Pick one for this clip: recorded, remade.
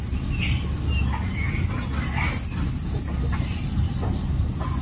recorded